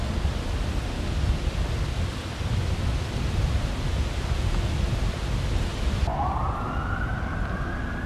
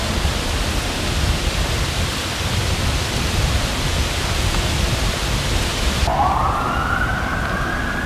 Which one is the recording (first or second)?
first